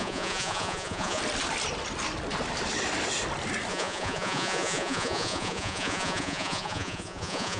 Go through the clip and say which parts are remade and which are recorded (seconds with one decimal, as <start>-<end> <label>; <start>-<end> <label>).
0.0-1.2 remade; 1.2-3.7 recorded; 3.7-7.6 remade